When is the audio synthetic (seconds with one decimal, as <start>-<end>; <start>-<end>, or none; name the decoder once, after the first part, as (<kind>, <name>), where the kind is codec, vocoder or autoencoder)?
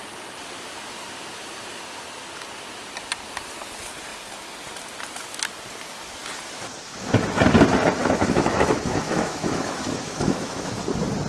8.0-10.8 (autoencoder, DAC-VAE)